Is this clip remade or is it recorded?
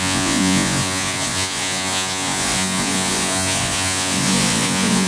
remade